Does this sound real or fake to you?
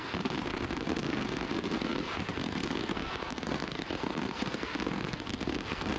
fake